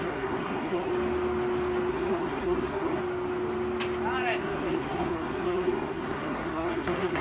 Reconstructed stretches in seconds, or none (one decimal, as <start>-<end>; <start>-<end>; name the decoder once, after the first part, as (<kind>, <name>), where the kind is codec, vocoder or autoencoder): 0.0-0.9 (codec, SNAC); 1.9-3.0; 4.4-7.2